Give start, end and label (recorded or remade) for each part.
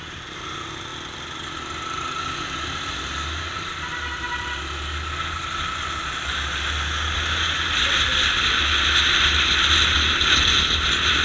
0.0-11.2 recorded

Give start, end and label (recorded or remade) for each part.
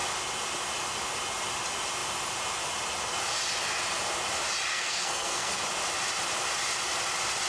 0.0-4.7 recorded; 4.7-5.6 remade; 5.6-7.5 recorded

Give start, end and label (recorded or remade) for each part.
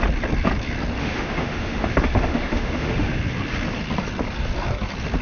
0.0-1.0 recorded; 1.0-3.2 remade; 3.2-5.2 recorded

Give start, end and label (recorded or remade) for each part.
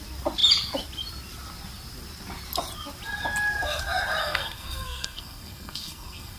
0.0-4.2 recorded; 4.2-6.4 remade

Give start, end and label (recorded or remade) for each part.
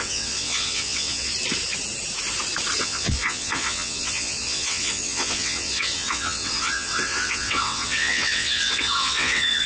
0.0-1.3 remade; 1.3-2.8 recorded; 2.8-9.7 remade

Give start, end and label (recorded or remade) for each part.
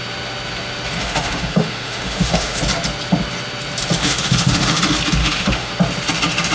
0.0-1.0 recorded; 1.0-2.6 remade; 2.6-4.0 recorded; 4.0-4.8 remade; 4.8-5.2 recorded; 5.2-5.7 remade; 5.7-6.5 recorded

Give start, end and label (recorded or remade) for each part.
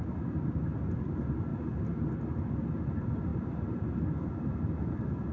0.0-5.3 recorded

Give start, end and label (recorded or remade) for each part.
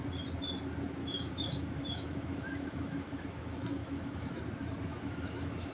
0.0-1.0 recorded; 1.0-4.4 remade; 4.4-4.9 recorded; 4.9-5.7 remade